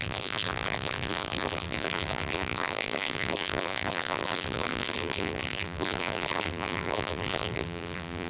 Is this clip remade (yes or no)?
yes